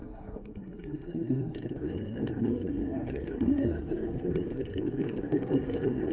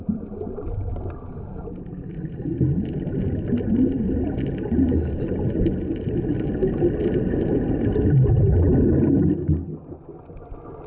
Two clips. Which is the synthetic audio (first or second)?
first